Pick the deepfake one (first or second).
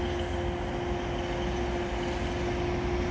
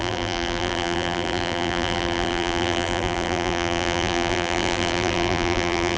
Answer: second